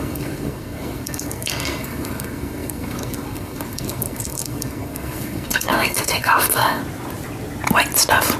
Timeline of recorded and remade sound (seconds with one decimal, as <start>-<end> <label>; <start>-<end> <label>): 0.0-6.8 remade; 6.8-8.4 recorded